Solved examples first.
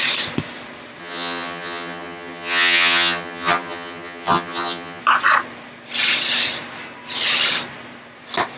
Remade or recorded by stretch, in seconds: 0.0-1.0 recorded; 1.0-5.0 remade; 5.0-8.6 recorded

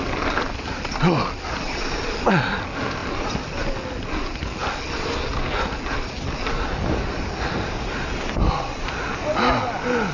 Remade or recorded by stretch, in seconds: 0.0-10.1 recorded

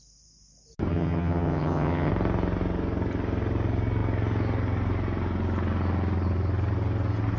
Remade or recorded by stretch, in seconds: 0.0-0.9 recorded; 0.9-2.1 remade; 2.1-7.4 recorded

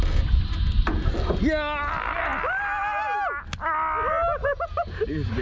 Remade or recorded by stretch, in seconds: 0.0-5.4 recorded

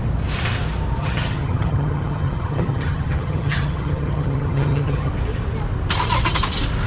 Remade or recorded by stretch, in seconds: 0.0-1.0 recorded; 1.0-5.1 remade; 5.1-6.9 recorded

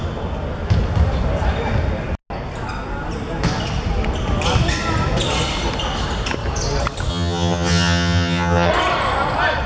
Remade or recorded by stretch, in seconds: 0.0-7.1 recorded; 7.1-8.7 remade; 8.7-9.7 recorded

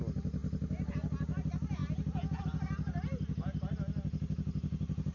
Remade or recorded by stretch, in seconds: 0.0-5.1 recorded

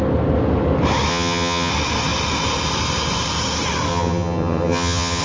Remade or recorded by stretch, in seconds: 0.0-1.1 recorded; 1.1-1.7 remade; 1.7-3.9 recorded; 3.9-5.2 remade